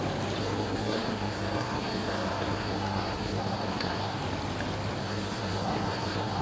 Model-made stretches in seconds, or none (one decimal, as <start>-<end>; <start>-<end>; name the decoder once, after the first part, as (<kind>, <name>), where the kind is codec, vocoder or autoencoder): 0.4-4.2 (codec, SNAC); 5.0-6.4